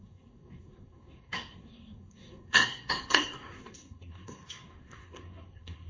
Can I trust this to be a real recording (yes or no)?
no